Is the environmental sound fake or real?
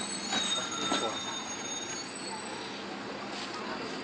real